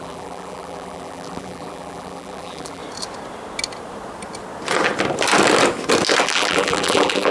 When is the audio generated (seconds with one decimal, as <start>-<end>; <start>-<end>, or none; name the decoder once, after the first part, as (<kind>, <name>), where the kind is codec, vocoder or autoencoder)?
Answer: 0.0-2.8 (vocoder, BigVGAN v2); 6.2-7.3

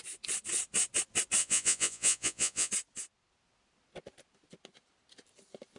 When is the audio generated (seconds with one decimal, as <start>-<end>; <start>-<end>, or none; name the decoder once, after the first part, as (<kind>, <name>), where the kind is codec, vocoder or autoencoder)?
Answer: 1.4-2.7 (vocoder, Vocos)

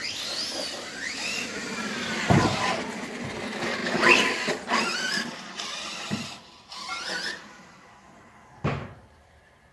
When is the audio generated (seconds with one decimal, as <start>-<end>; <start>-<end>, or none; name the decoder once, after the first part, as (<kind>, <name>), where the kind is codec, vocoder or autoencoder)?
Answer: none

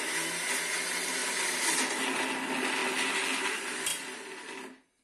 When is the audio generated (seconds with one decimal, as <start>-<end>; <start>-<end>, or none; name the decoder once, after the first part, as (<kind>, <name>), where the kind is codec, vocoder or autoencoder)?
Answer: none

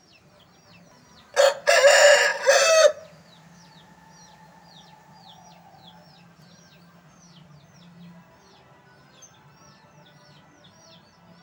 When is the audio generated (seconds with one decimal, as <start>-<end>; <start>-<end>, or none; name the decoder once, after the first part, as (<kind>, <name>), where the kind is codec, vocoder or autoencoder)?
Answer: none

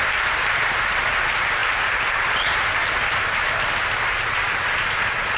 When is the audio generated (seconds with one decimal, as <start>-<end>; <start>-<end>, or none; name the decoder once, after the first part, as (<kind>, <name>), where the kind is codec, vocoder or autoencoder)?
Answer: none

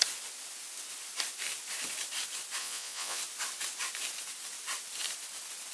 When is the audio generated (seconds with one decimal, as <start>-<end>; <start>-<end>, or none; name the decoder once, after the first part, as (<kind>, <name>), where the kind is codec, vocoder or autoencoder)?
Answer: 2.6-3.2 (vocoder, Vocos)